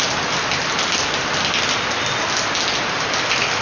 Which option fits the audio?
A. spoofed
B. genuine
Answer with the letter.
B